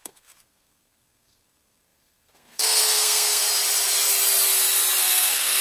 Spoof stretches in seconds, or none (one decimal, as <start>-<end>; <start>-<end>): 0.0-3.4; 5.0-5.6